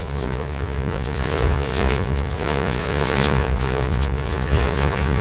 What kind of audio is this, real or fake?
fake